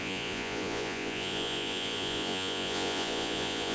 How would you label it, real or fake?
fake